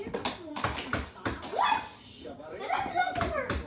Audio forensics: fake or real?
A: real